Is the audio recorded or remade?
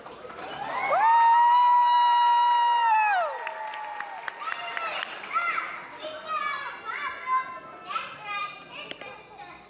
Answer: recorded